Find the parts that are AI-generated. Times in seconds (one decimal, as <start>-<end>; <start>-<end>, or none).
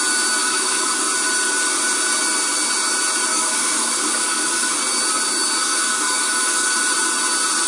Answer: 0.4-1.0; 3.3-4.7; 5.6-6.7